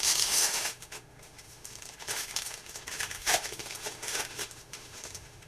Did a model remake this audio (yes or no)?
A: yes